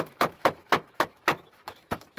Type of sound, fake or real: fake